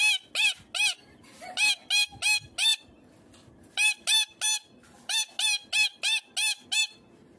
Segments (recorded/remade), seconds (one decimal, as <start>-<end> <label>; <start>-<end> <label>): 0.0-7.4 recorded